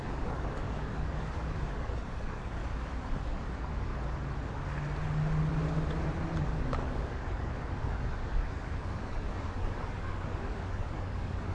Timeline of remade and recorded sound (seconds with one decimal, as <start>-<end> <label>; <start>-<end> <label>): 0.0-2.6 remade; 2.6-3.2 recorded; 3.2-3.9 remade; 3.9-6.4 recorded; 6.4-11.5 remade